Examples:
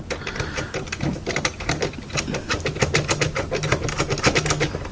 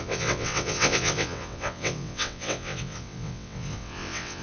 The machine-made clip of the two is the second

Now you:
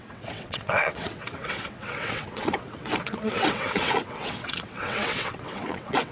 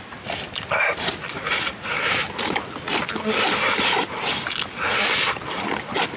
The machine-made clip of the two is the first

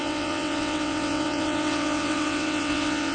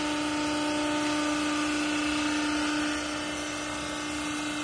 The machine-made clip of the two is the first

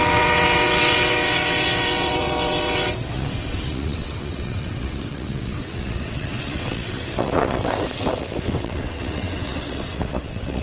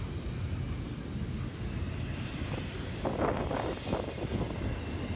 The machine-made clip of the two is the first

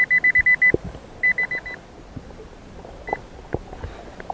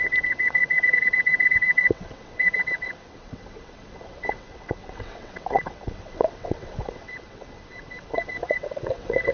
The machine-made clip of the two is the second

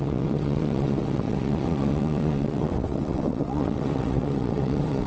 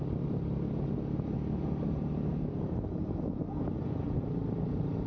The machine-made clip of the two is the first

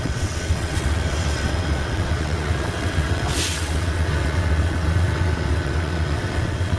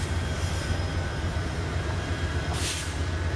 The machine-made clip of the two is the first